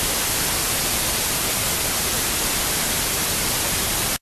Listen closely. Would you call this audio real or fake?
real